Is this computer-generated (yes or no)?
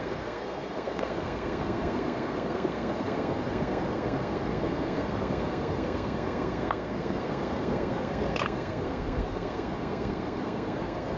yes